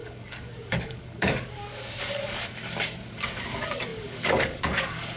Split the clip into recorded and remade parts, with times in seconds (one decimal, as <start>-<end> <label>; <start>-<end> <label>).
0.0-5.2 remade